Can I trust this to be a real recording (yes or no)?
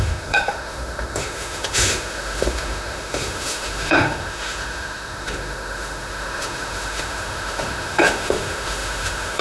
no